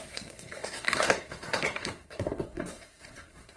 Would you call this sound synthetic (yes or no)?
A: yes